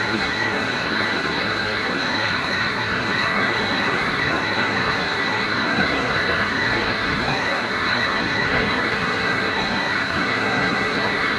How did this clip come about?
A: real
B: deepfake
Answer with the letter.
B